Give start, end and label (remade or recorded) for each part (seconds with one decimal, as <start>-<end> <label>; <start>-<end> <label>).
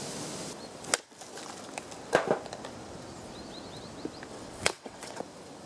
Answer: 0.0-4.3 recorded; 4.3-5.2 remade; 5.2-5.7 recorded